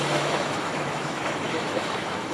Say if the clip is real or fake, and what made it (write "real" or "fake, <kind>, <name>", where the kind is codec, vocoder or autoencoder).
fake, autoencoder, DAC-VAE